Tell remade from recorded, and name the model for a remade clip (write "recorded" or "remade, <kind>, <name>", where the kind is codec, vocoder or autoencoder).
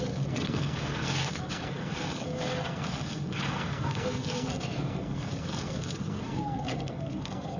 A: remade, codec, SNAC